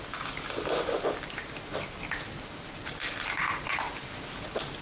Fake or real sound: real